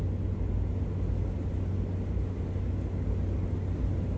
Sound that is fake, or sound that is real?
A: real